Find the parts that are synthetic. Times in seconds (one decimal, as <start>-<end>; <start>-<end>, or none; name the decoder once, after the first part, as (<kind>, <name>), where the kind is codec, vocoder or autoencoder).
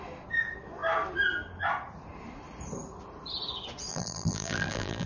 3.9-5.1 (vocoder, BigVGAN v2)